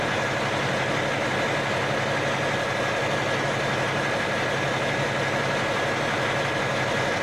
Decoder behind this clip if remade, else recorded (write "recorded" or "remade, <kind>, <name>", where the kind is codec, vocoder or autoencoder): recorded